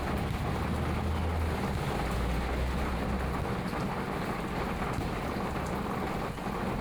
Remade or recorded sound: recorded